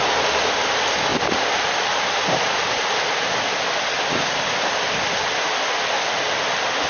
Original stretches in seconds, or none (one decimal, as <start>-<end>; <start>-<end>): 0.0-1.1; 4.9-6.9